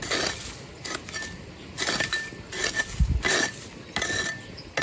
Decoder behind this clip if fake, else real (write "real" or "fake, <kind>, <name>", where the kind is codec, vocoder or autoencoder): real